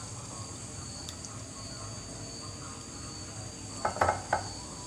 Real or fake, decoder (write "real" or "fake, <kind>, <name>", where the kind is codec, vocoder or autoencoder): real